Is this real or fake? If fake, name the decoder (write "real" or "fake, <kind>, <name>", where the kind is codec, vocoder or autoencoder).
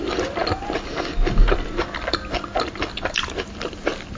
real